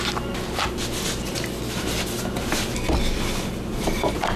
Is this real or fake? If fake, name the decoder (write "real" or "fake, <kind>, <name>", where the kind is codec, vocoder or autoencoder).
real